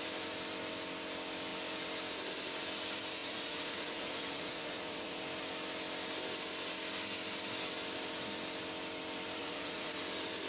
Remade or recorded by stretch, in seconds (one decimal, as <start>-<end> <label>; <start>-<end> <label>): 0.0-3.2 recorded; 3.2-5.2 remade; 5.2-9.4 recorded; 9.4-10.0 remade; 10.0-10.5 recorded

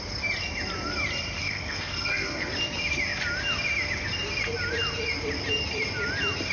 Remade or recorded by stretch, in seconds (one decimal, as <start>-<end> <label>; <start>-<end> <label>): 0.0-1.4 recorded; 1.4-2.5 remade; 2.5-6.5 recorded

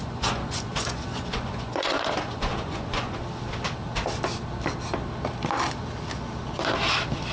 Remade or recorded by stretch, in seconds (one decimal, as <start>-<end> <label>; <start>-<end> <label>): 0.0-3.2 remade; 3.2-7.3 recorded

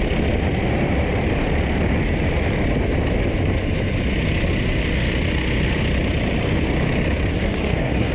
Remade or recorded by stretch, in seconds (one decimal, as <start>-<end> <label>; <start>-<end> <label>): 0.0-7.3 recorded; 7.3-8.1 remade

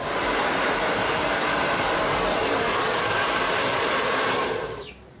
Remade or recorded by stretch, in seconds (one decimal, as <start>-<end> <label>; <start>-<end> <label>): 0.0-5.2 remade

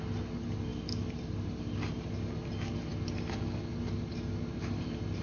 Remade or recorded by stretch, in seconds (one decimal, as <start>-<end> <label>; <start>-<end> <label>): 0.0-0.7 recorded; 0.7-1.6 remade; 1.6-2.9 recorded; 2.9-4.8 remade; 4.8-5.2 recorded

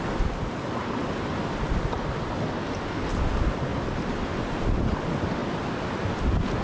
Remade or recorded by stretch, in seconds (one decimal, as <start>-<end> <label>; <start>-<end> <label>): 0.0-6.6 recorded

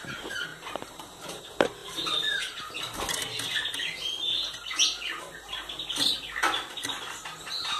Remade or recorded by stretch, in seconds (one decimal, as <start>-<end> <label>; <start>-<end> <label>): 0.0-0.5 recorded; 0.5-1.4 remade; 1.4-1.8 recorded; 1.8-2.6 remade; 2.6-7.8 recorded